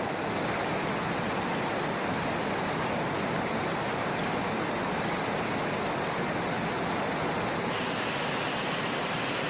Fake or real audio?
real